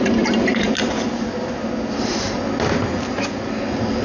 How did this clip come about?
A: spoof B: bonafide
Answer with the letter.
B